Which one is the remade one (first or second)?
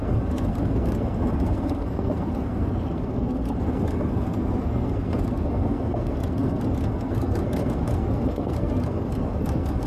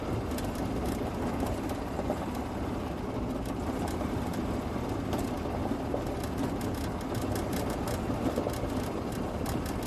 first